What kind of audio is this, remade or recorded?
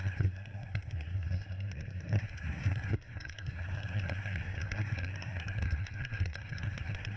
remade